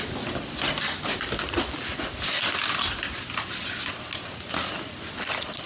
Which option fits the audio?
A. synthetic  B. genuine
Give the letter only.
B